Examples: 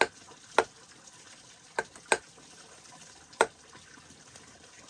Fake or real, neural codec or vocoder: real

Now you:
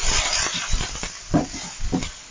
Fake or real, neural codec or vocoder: real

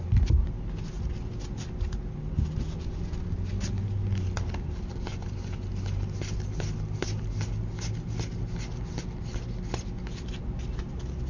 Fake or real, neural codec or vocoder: real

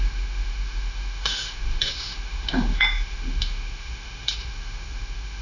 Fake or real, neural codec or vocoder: fake, autoencoder, DAC-VAE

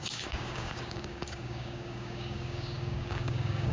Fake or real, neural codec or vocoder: fake, codec, DAC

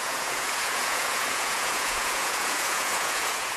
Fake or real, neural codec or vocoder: fake, vocoder, Vocos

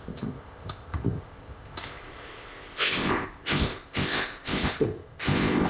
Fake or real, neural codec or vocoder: fake, codec, ZipCodec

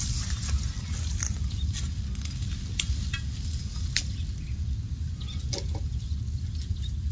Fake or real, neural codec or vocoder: real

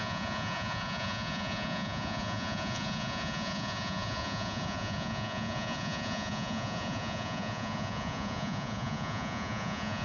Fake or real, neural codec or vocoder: fake, vocoder, Vocos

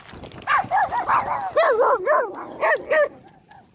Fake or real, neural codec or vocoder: real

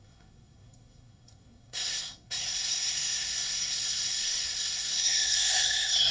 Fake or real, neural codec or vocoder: fake, codec, SNAC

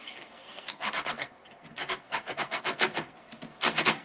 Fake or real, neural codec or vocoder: fake, codec, SNAC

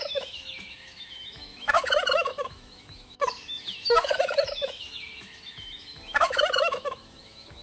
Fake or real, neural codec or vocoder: fake, autoencoder, DAC-VAE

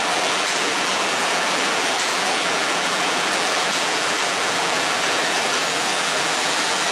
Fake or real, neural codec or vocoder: fake, vocoder, BigVGAN v2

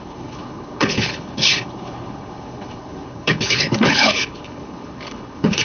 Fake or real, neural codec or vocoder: fake, codec, HILCodec